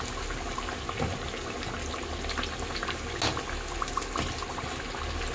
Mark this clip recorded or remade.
recorded